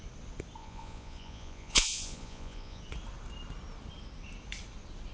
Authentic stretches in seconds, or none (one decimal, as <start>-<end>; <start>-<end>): 0.0-0.6; 2.8-5.1